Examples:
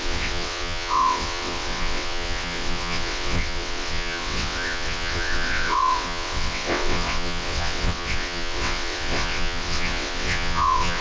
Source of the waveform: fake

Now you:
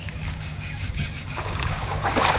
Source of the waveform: fake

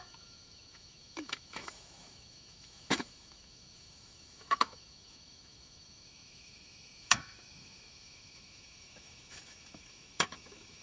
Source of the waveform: fake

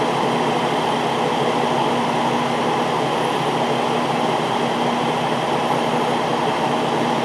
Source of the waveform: real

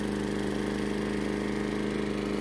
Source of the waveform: real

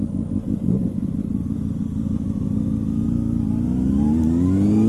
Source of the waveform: real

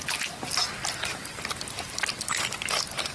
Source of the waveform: real